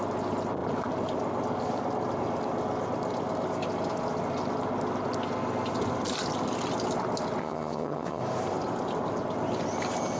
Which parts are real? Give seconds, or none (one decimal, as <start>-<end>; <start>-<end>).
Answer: 0.0-7.4; 8.2-10.2